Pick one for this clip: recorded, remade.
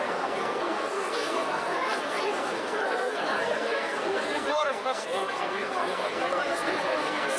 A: remade